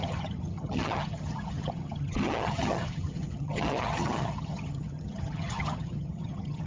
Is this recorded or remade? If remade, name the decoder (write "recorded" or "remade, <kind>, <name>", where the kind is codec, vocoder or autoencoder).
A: remade, vocoder, HiFi-GAN